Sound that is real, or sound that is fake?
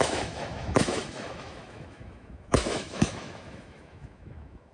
fake